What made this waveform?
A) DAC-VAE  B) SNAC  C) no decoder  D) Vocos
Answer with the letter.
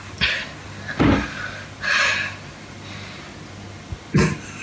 C